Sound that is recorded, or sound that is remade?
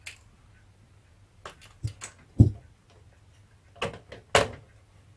recorded